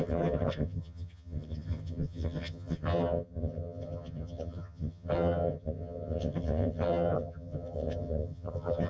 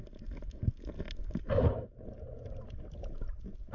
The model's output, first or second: first